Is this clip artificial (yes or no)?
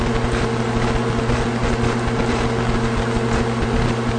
no